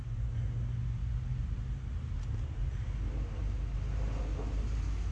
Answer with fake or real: real